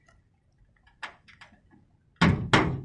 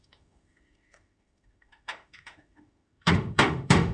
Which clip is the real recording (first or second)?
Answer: first